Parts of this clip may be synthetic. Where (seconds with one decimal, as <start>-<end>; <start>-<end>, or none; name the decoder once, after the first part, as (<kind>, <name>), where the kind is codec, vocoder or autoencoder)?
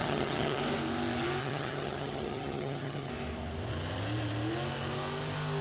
0.0-0.6 (vocoder, HiFi-GAN); 1.4-3.1